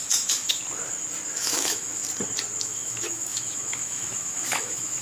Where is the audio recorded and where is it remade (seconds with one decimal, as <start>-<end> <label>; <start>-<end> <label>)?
0.0-0.6 remade; 0.6-1.3 recorded; 1.3-2.0 remade; 2.0-2.6 recorded; 2.6-5.0 remade

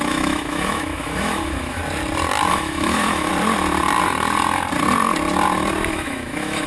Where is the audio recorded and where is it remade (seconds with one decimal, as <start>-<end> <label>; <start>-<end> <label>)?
0.0-1.8 remade; 1.8-2.5 recorded; 2.5-3.3 remade; 3.3-5.9 recorded; 5.9-6.7 remade

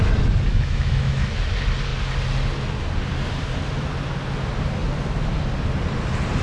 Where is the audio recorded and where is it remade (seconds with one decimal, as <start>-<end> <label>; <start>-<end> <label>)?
0.0-0.5 recorded; 0.5-1.3 remade; 1.3-6.4 recorded

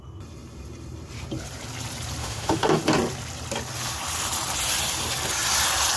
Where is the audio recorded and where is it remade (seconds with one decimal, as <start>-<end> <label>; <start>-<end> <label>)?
0.0-2.2 recorded; 2.2-2.8 remade; 2.8-6.0 recorded

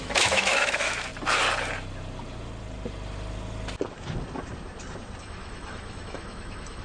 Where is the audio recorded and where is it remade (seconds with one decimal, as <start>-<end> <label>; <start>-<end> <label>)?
0.0-1.1 remade; 1.1-5.2 recorded; 5.2-6.8 remade

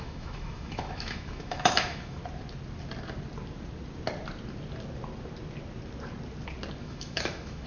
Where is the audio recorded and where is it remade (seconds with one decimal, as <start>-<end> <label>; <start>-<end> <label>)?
0.0-2.2 remade; 2.2-6.8 recorded; 6.8-7.7 remade

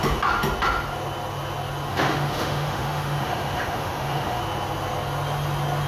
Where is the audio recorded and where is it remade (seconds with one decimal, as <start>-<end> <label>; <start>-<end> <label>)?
0.0-1.9 recorded; 1.9-4.4 remade; 4.4-5.9 recorded

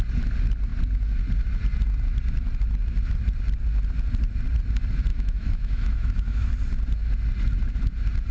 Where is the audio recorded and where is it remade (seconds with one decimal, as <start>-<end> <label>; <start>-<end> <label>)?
0.0-5.1 recorded; 5.1-6.5 remade; 6.5-8.3 recorded